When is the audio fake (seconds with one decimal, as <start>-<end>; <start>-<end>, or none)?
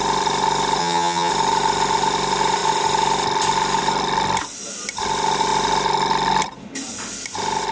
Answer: 0.8-1.3